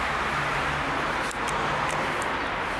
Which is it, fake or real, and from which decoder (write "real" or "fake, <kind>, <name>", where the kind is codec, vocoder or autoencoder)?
real